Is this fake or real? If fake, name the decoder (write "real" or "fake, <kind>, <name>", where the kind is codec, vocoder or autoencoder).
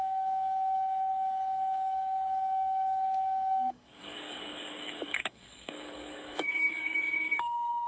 fake, codec, DAC